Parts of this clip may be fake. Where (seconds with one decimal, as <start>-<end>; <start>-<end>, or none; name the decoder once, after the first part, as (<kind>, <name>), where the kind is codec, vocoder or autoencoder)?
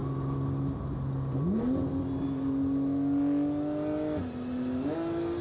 none